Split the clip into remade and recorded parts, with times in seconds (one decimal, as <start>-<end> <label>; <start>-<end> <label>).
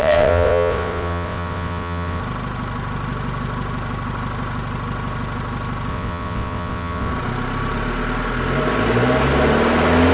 0.0-2.2 remade; 2.2-5.9 recorded; 5.9-7.1 remade; 7.1-10.1 recorded